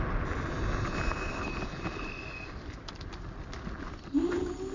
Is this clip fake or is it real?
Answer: real